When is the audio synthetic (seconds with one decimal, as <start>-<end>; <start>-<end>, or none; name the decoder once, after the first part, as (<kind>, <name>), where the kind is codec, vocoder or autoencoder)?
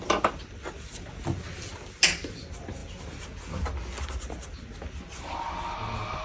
none